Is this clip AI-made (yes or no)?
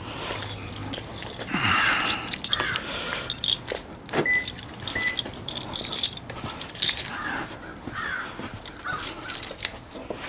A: no